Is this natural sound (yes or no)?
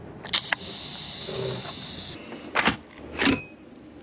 yes